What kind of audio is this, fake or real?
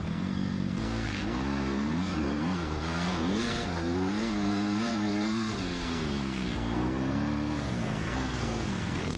fake